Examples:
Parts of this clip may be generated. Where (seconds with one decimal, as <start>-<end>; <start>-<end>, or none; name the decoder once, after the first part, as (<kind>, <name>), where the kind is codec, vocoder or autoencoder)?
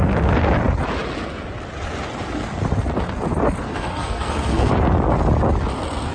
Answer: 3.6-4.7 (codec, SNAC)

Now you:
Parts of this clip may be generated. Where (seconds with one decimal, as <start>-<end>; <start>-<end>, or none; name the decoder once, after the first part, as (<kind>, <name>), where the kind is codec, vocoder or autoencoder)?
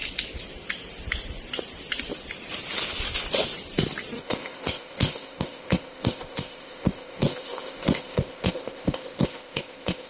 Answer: 4.2-10.1 (codec, ZipCodec)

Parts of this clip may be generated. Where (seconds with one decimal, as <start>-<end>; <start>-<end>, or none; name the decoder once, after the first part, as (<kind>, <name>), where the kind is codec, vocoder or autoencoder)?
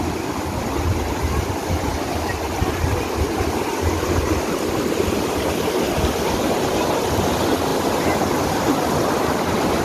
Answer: 7.7-8.6 (vocoder, BigVGAN v2)